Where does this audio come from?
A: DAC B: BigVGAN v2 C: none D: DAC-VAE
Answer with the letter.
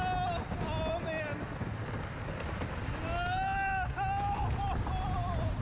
C